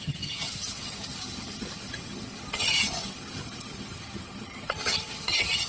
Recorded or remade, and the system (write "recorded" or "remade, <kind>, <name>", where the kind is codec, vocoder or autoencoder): remade, vocoder, HiFi-GAN